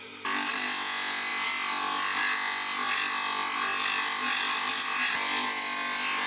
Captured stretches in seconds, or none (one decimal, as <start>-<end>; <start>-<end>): 0.0-6.3